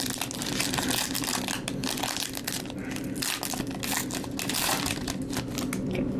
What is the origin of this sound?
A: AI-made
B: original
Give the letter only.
B